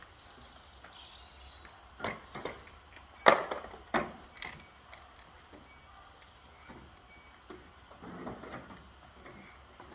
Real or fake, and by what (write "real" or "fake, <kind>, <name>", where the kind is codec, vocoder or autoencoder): real